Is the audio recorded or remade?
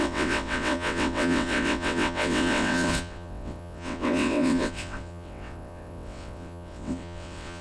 remade